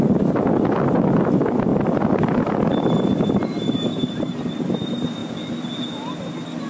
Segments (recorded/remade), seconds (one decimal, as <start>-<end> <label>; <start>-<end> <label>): 0.0-6.7 recorded